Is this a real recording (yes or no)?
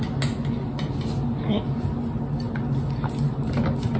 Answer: yes